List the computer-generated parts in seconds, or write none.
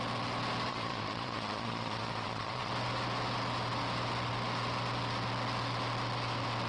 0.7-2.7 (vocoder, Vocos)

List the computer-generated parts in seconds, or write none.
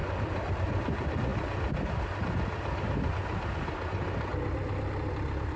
none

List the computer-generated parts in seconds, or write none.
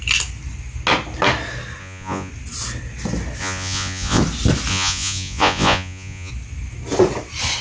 1.8-2.3 (vocoder, Vocos); 3.4-4.2; 4.7-6.3